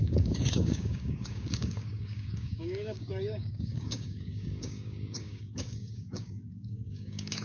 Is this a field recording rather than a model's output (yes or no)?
no